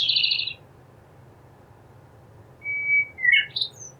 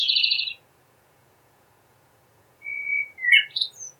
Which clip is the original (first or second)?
first